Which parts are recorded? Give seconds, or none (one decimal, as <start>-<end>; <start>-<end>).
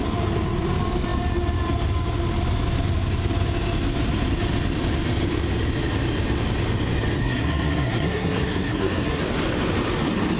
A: 0.0-7.2; 9.2-10.4